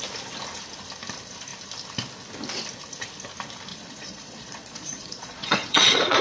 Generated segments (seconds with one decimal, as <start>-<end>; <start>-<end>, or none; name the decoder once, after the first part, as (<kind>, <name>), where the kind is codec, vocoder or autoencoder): 3.7-6.2 (vocoder, Vocos)